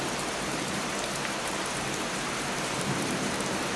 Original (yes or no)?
no